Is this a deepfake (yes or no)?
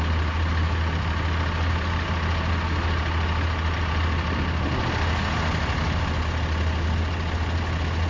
no